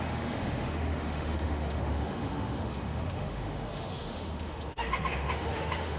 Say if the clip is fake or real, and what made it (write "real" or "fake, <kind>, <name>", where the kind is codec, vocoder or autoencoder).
fake, autoencoder, DAC-VAE